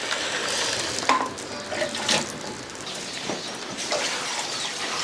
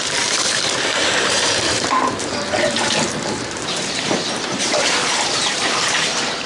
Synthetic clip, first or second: second